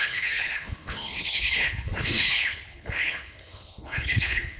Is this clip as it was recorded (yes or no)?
no